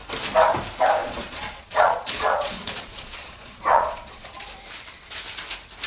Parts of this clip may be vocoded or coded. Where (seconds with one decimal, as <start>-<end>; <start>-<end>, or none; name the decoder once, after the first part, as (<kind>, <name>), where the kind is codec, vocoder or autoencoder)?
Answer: 1.0-4.5 (vocoder, Vocos)